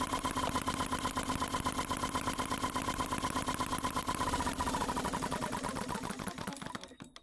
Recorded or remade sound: recorded